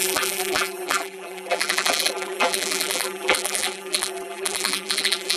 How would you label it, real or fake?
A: fake